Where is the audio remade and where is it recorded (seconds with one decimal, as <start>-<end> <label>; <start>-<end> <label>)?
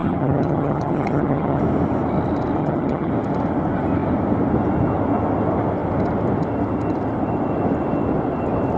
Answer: 0.0-1.6 remade; 1.6-2.6 recorded; 2.6-3.1 remade; 3.1-8.8 recorded